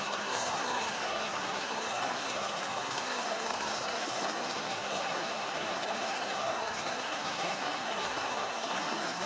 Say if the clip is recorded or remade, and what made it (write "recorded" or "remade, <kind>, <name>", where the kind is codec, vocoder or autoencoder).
remade, codec, SNAC